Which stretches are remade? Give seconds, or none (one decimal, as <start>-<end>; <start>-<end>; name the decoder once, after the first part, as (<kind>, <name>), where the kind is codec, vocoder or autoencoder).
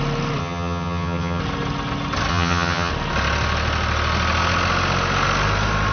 0.4-1.4 (vocoder, HiFi-GAN); 2.3-2.9